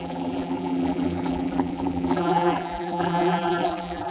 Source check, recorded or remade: remade